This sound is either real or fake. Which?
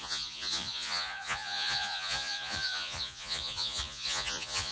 fake